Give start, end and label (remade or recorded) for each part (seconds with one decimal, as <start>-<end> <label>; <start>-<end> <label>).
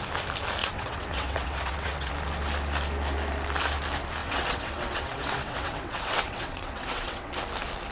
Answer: 0.0-0.6 recorded; 0.6-2.1 remade; 2.1-4.2 recorded; 4.2-7.3 remade; 7.3-7.9 recorded